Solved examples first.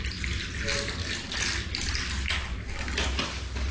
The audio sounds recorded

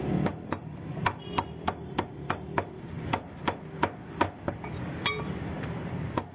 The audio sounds recorded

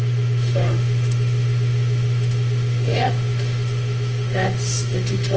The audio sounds remade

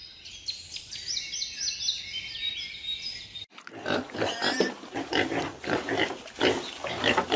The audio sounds recorded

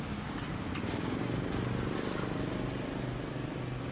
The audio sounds recorded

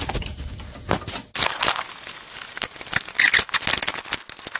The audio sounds recorded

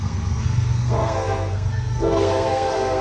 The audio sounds remade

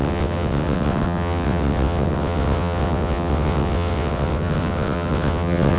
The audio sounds remade